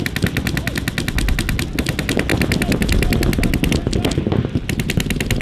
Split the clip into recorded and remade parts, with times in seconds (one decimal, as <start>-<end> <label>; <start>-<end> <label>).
0.0-5.4 recorded